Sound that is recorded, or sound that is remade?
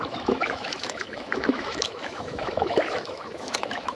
remade